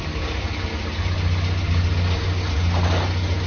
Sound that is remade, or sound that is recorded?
recorded